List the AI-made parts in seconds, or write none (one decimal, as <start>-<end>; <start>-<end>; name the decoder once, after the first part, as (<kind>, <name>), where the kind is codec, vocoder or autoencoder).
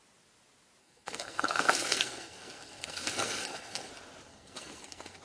0.8-3.9 (codec, SNAC); 4.3-5.2